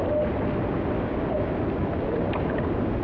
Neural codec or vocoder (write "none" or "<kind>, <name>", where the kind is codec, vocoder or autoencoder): none